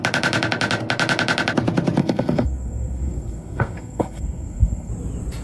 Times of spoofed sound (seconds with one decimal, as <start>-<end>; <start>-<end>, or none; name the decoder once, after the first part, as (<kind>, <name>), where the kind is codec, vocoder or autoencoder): 2.0-4.9 (codec, SNAC)